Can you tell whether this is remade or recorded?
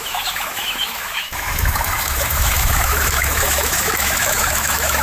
remade